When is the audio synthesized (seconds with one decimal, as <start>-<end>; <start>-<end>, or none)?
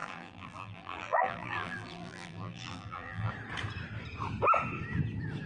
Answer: 0.0-3.3